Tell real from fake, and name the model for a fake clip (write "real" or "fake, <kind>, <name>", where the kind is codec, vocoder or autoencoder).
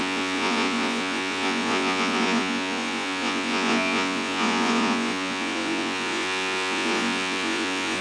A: fake, vocoder, Vocos